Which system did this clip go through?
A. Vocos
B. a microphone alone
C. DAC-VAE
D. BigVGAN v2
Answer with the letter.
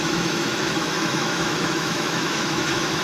C